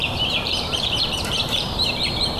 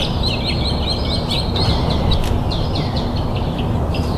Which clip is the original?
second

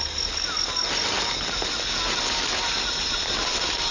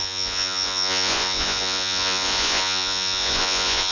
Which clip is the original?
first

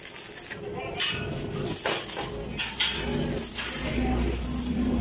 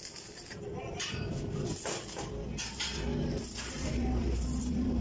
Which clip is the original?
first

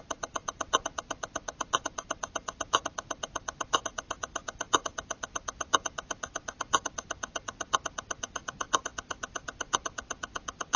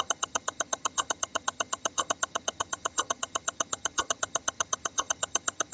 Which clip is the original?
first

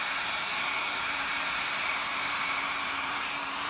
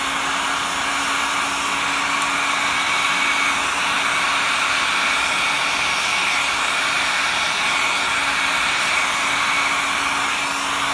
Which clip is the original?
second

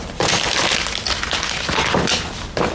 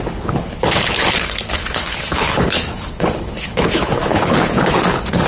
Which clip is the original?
first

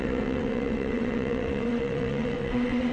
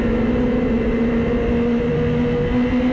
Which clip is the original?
second